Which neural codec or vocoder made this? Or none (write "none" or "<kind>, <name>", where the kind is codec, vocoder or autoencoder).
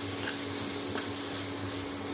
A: none